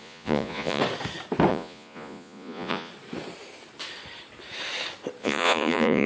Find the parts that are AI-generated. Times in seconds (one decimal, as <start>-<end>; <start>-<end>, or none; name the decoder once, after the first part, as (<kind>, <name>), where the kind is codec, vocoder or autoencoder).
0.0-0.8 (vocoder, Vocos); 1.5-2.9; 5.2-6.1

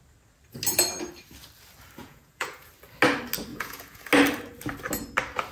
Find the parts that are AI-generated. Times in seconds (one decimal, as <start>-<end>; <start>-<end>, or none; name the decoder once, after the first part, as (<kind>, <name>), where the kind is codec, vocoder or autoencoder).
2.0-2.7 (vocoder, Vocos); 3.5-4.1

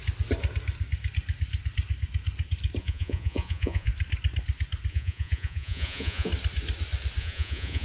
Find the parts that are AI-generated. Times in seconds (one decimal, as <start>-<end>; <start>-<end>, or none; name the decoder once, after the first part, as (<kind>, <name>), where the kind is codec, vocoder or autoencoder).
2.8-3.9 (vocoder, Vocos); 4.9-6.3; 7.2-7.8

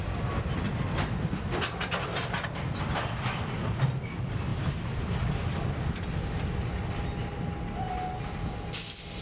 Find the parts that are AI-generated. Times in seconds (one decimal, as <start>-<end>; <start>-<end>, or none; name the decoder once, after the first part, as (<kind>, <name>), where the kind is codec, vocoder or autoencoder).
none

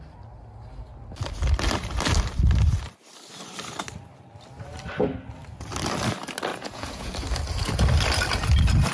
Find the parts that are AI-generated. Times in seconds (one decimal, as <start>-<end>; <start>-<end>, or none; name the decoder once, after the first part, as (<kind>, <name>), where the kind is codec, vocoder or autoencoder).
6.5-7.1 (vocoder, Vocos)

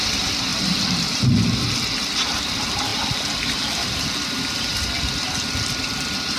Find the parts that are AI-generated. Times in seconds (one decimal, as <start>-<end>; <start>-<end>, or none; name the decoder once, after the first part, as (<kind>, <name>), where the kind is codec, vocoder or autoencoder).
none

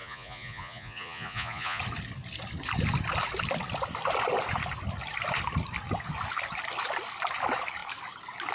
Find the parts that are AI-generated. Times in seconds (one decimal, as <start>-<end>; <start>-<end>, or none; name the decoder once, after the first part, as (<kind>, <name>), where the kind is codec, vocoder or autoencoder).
0.0-1.8 (vocoder, Vocos)